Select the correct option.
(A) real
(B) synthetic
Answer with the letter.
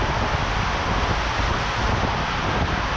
A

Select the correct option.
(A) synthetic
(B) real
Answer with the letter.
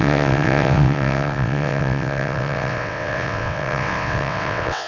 A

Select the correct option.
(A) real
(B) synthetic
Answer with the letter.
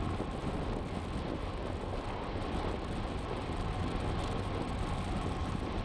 A